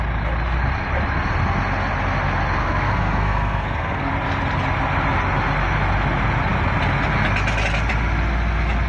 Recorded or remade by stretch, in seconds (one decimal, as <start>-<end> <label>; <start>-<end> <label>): 0.0-2.6 recorded; 2.6-4.1 remade; 4.1-8.9 recorded